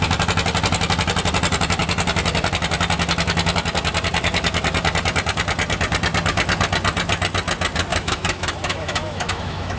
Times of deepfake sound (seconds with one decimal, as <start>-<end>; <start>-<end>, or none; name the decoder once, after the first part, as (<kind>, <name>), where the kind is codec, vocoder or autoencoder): 7.9-9.8 (autoencoder, DAC-VAE)